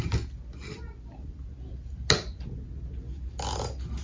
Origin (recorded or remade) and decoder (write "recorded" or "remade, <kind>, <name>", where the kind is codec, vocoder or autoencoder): recorded